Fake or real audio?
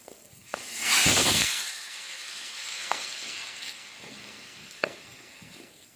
fake